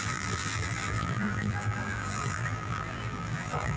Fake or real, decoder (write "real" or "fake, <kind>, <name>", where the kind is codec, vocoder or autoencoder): fake, vocoder, BigVGAN v2